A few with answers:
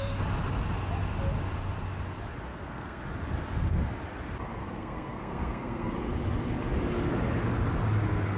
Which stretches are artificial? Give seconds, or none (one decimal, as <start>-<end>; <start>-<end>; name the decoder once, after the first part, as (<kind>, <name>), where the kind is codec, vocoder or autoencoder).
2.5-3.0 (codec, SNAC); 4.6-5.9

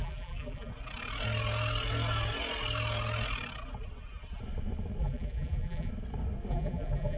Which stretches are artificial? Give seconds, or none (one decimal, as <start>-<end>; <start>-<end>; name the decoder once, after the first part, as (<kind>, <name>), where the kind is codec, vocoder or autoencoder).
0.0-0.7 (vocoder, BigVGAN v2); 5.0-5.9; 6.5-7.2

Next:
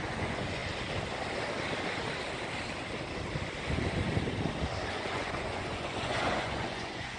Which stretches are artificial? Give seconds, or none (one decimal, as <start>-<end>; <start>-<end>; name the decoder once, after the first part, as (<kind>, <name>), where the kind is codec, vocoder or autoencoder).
0.0-0.6 (vocoder, Vocos); 4.9-7.2

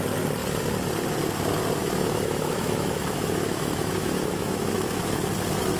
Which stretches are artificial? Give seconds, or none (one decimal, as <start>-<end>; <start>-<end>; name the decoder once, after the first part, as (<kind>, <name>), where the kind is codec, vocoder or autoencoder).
1.8-5.3 (autoencoder, DAC-VAE)